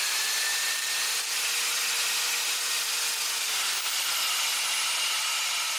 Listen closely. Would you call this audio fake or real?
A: real